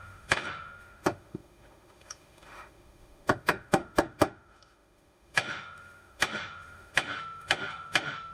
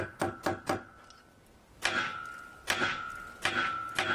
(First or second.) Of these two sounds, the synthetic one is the first